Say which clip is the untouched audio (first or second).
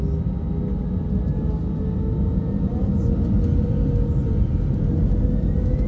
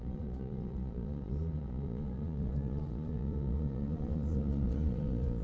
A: first